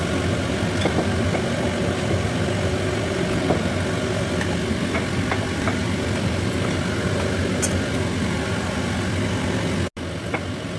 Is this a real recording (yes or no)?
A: yes